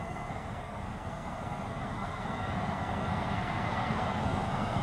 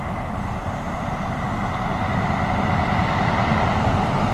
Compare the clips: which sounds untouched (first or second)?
second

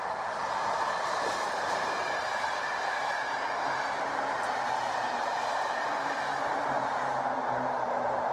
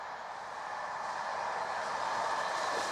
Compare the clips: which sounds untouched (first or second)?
second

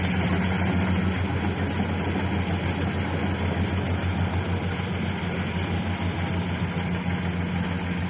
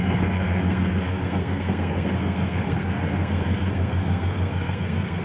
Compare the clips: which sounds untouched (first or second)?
first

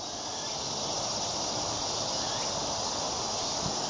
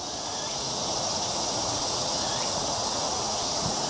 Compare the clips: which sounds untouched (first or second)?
first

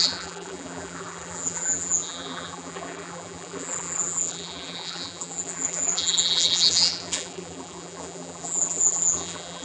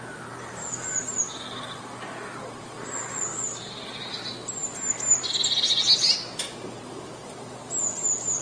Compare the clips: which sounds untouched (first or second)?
second